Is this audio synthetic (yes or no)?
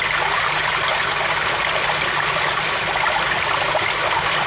no